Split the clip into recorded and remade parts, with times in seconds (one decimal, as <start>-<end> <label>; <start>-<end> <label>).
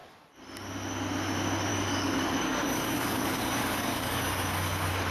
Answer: 0.0-1.7 recorded; 1.7-5.1 remade